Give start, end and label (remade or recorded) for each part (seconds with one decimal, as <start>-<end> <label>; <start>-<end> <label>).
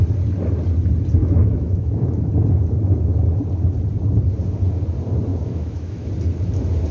0.0-1.2 recorded; 1.2-2.3 remade; 2.3-5.3 recorded; 5.3-6.1 remade; 6.1-6.9 recorded